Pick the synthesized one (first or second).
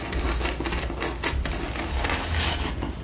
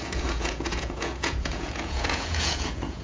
second